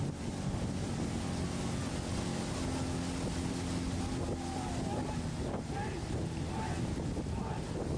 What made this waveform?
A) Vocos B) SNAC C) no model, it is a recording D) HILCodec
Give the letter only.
C